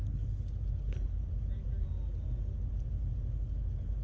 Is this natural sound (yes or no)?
yes